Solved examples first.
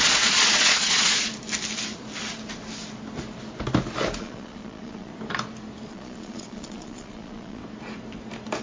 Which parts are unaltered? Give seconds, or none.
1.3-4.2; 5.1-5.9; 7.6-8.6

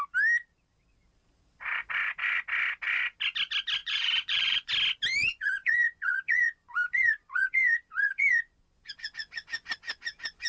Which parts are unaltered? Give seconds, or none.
0.0-3.8; 4.7-5.2

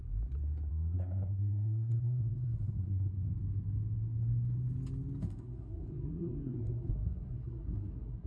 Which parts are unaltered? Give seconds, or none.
0.0-0.7; 3.3-5.2

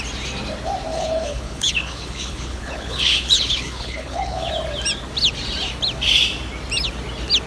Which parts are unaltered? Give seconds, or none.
0.0-0.9; 4.5-7.5

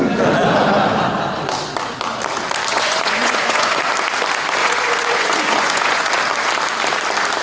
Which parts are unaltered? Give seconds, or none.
0.0-2.7; 3.9-4.6; 6.1-7.4

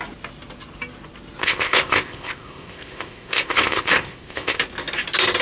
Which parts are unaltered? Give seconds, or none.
0.0-1.4; 4.6-5.4

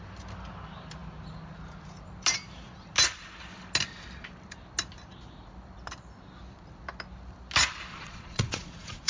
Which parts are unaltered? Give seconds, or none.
0.0-7.9